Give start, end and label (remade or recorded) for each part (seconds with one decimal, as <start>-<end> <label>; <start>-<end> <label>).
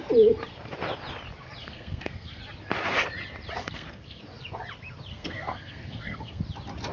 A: 0.0-1.6 recorded; 1.6-2.4 remade; 2.4-3.6 recorded; 3.6-4.2 remade; 4.2-5.1 recorded; 5.1-6.4 remade; 6.4-6.9 recorded